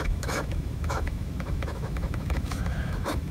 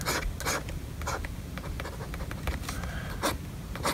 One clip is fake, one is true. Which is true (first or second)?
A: second